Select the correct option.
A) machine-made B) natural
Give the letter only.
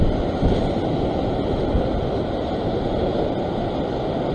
B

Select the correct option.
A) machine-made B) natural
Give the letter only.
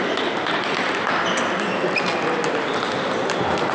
B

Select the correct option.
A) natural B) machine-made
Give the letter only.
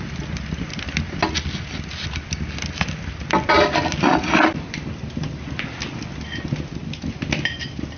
A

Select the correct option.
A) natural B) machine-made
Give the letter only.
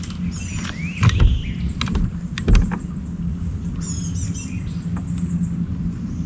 A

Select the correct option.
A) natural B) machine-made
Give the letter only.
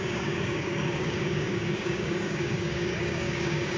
B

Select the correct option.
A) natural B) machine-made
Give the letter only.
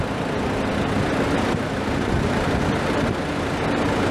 A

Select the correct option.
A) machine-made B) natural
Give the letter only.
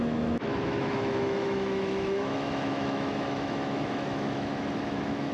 A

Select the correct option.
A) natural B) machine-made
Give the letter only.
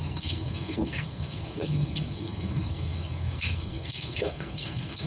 B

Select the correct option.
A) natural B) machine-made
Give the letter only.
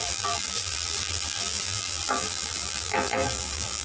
B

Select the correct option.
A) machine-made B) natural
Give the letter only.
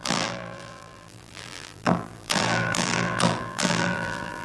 A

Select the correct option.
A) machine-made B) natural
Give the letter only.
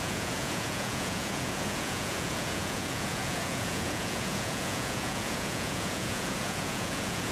A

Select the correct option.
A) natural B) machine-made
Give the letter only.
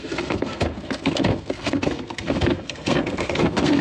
B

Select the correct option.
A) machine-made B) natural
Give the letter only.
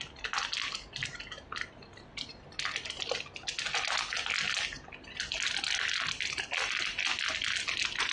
B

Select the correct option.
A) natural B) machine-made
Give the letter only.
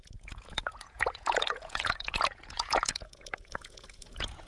B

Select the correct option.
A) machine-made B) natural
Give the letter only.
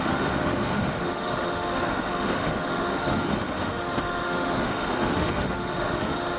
A